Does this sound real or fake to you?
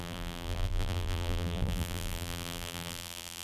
fake